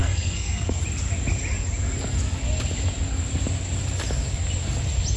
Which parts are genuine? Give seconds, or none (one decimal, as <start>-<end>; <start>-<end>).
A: 0.8-5.2